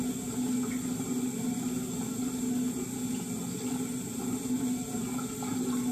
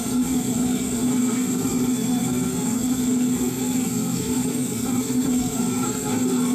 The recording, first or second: first